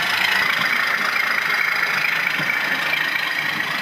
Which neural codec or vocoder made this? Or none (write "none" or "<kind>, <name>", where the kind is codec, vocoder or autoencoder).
none